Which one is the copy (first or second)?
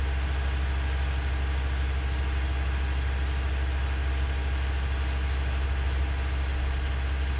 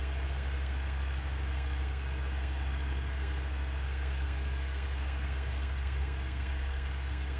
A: second